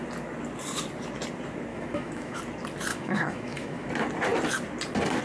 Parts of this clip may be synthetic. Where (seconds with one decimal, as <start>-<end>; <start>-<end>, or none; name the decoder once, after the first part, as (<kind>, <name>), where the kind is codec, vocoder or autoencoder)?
1.7-2.4 (autoencoder, DAC-VAE); 2.9-3.9

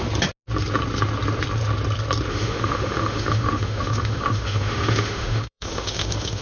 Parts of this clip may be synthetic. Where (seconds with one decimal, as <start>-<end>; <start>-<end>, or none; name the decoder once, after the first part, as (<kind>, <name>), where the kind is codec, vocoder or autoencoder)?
2.3-6.4 (autoencoder, DAC-VAE)

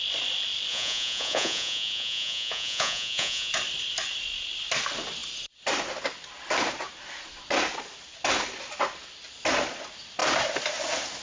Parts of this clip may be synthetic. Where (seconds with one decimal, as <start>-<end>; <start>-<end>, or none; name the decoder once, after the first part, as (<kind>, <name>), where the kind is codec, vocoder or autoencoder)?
0.7-3.5 (vocoder, Vocos)

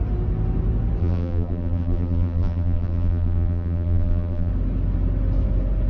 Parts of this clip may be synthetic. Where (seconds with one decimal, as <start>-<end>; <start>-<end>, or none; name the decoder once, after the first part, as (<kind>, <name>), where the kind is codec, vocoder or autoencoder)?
1.0-4.5 (vocoder, BigVGAN v2)

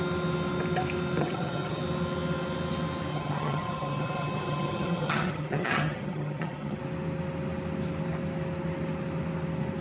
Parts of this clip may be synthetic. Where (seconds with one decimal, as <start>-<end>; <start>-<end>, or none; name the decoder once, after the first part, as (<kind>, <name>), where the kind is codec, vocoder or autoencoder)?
1.2-1.8 (vocoder, HiFi-GAN); 3.1-6.8

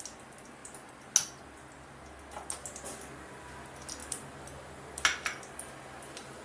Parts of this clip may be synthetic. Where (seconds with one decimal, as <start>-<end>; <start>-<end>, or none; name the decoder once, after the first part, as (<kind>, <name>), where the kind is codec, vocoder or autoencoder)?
none

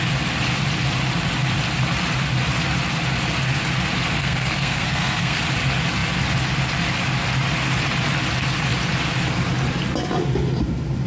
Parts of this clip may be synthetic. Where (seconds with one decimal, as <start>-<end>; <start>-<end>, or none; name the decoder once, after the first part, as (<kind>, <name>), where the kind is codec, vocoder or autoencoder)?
4.2-5.4 (codec, SNAC)